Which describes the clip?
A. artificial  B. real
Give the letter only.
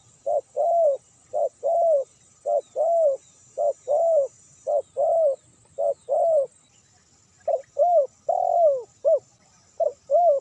B